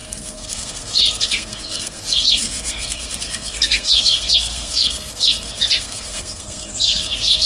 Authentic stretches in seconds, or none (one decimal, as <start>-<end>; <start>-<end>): none